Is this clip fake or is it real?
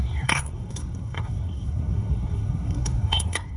fake